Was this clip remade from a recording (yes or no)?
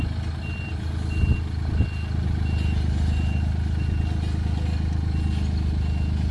no